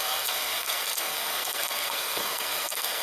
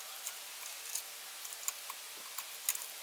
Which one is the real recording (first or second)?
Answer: second